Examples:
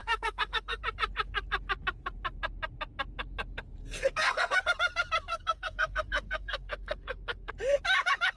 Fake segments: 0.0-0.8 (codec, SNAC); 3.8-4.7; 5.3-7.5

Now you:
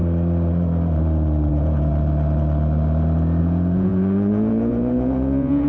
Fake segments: 1.5-1.9 (vocoder, Vocos); 3.4-5.7

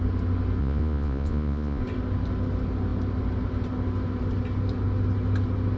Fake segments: 0.6-1.8 (vocoder, Vocos)

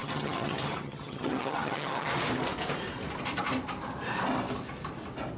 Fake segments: 0.0-2.1 (vocoder, HiFi-GAN)

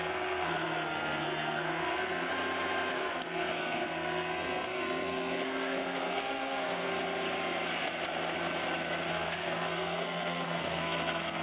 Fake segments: 0.0-2.3 (codec, SNAC); 2.9-6.9; 9.1-11.4

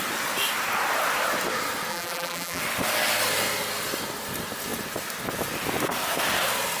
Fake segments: 1.9-2.6 (vocoder, BigVGAN v2)

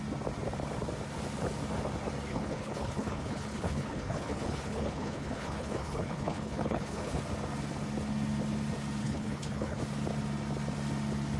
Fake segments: 2.3-7.2 (codec, HILCodec); 9.0-9.8